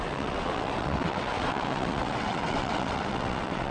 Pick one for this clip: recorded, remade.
remade